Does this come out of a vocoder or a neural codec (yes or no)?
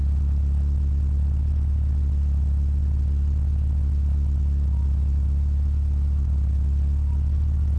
no